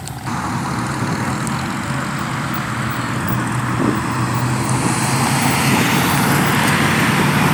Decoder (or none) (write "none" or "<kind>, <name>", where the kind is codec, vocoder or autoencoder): none